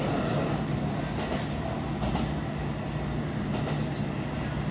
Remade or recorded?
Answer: recorded